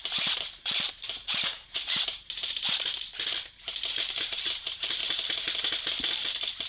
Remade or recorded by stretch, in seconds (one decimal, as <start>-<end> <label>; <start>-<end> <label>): 0.0-5.0 remade; 5.0-6.1 recorded; 6.1-6.7 remade